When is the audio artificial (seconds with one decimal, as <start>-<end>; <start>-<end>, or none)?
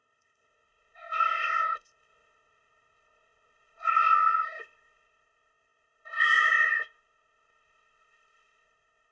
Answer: 0.0-9.1